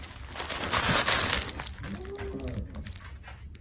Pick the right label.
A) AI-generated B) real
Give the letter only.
B